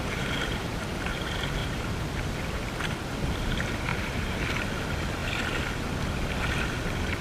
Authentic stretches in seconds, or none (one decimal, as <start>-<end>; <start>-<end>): 0.9-1.6; 2.1-3.9; 4.6-7.2